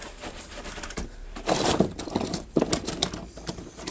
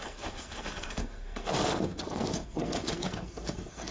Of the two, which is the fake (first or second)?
second